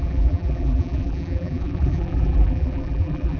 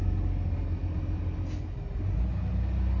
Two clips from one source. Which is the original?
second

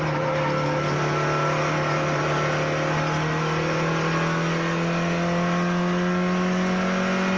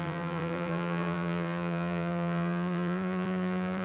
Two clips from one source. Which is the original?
first